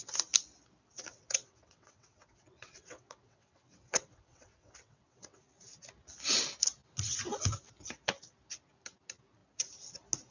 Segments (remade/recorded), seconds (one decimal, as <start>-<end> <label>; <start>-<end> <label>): 0.0-1.1 recorded; 1.1-5.4 remade; 5.4-10.3 recorded